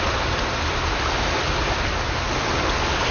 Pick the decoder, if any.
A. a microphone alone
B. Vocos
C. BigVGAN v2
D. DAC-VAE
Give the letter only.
A